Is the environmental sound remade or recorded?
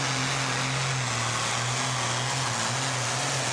recorded